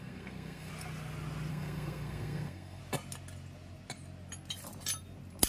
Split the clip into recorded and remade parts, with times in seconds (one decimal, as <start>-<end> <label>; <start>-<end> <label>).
0.0-0.7 remade; 0.7-1.5 recorded; 1.5-2.8 remade; 2.8-5.5 recorded